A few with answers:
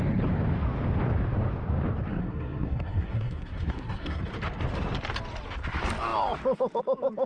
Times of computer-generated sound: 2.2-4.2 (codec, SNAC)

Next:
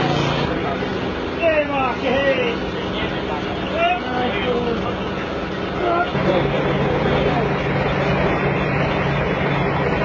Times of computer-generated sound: none

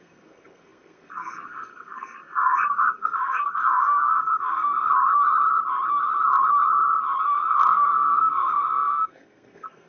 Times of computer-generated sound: 0.0-4.9 (codec, SNAC); 7.2-9.9

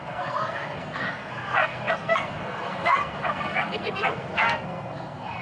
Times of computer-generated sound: 0.0-5.4 (codec, SNAC)

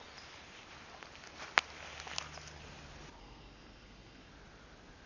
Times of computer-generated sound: 3.2-4.3 (codec, SNAC)